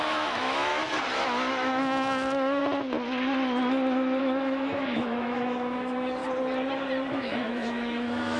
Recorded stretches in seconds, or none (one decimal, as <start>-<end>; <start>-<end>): 0.7-1.5; 2.6-4.2; 6.2-7.1

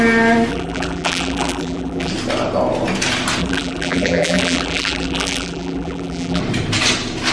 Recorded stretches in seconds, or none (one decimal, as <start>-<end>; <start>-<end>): 0.0-0.5; 2.1-3.4; 6.4-7.3

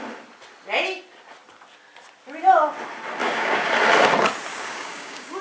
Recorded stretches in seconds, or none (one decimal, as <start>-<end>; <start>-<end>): 0.0-3.2; 3.7-4.5

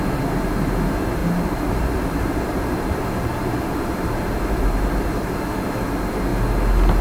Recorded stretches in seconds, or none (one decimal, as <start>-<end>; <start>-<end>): 0.0-1.2; 5.4-7.0

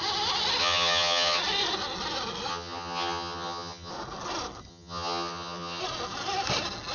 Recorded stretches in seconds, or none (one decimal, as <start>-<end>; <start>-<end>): 0.0-0.6; 1.4-2.5; 3.9-4.7; 5.8-6.9

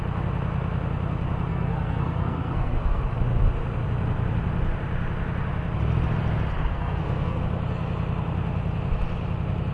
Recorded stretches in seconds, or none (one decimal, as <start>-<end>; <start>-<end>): 0.0-1.5; 3.0-6.7; 7.4-9.7

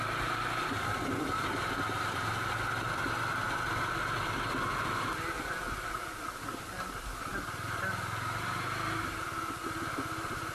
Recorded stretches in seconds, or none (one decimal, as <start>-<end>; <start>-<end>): 0.0-10.5

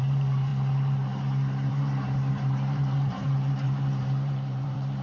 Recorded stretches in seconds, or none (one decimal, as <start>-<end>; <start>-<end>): 0.5-1.7